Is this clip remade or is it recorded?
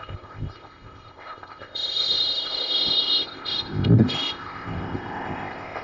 remade